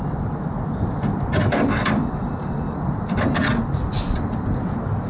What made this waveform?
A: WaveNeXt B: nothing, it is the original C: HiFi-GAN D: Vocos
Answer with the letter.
B